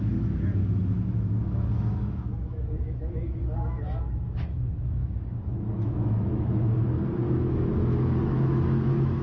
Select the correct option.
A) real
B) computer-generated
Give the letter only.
B